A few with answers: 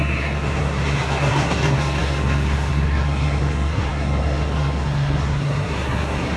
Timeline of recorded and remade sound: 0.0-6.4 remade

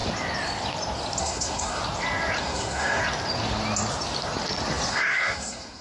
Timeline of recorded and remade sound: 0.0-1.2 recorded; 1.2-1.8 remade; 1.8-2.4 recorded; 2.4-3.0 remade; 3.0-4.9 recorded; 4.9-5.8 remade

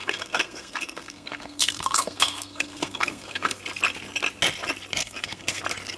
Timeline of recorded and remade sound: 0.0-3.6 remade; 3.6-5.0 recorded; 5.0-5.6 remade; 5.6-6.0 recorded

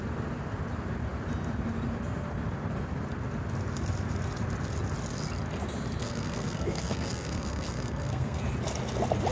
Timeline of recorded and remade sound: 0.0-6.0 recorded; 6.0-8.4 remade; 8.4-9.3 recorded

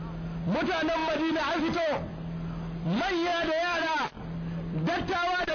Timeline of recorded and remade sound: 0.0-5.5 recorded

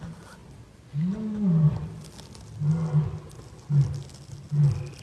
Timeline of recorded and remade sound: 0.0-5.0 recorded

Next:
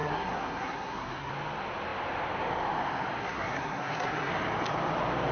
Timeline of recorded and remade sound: 0.0-1.3 remade; 1.3-3.2 recorded; 3.2-4.3 remade; 4.3-5.3 recorded